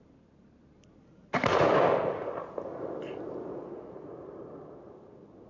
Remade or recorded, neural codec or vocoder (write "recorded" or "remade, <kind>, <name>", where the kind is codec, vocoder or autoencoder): recorded